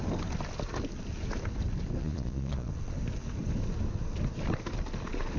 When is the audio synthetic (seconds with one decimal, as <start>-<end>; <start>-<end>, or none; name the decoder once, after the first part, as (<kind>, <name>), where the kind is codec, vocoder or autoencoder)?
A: 2.0-2.7 (vocoder, Vocos)